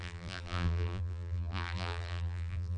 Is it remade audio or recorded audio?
remade